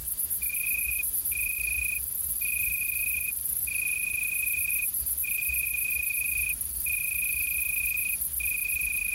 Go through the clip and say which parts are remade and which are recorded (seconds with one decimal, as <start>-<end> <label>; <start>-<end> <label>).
0.0-9.1 remade